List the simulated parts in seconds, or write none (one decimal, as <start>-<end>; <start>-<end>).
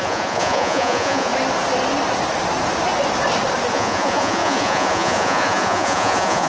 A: 0.0-1.3; 3.7-6.5